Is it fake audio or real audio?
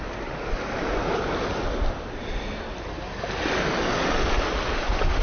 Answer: real